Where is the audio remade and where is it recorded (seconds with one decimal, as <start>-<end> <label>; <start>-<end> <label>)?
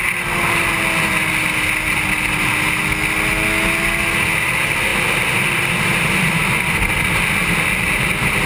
0.0-8.5 recorded